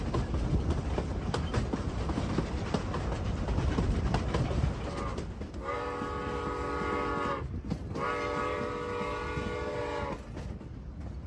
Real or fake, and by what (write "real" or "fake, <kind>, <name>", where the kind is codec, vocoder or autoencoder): real